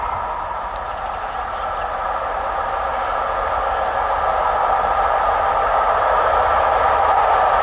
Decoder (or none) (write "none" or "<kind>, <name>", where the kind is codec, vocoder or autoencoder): none